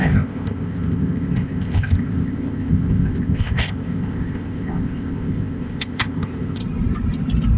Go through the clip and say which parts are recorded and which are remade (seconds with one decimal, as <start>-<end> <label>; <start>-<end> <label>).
0.0-6.6 remade; 6.6-7.6 recorded